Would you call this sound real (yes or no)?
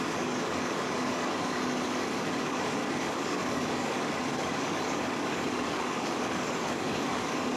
no